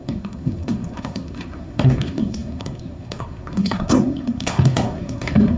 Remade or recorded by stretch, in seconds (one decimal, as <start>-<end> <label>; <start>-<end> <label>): 0.0-5.6 remade